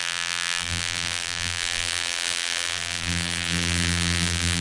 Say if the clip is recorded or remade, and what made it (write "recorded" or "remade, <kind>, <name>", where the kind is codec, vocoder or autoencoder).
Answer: remade, vocoder, BigVGAN v2